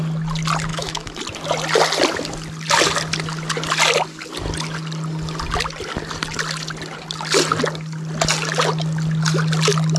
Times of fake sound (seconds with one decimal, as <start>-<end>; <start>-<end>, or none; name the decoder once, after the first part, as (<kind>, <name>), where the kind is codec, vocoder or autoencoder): 0.7-1.2 (autoencoder, DAC-VAE)